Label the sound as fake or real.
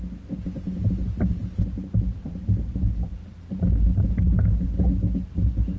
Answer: real